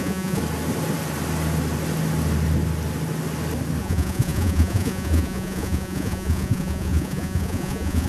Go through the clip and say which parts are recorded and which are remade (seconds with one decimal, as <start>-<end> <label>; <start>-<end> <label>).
0.0-0.4 remade; 0.4-3.8 recorded; 3.8-8.1 remade